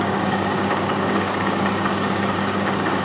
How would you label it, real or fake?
fake